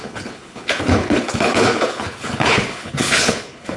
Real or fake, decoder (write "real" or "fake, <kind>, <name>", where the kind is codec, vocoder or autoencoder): fake, codec, HILCodec